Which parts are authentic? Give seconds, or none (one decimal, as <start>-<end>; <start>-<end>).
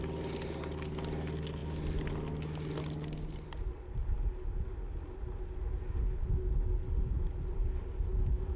0.0-8.6